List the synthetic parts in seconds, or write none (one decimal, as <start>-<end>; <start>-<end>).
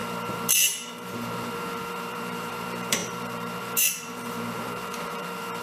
0.0-5.6